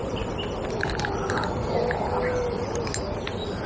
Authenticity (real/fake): real